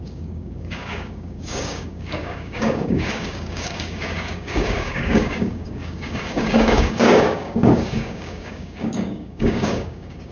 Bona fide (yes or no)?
no